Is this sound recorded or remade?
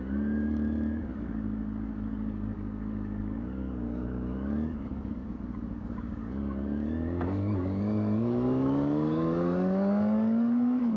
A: remade